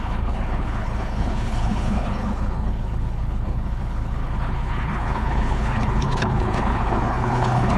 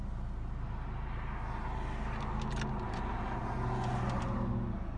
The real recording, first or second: second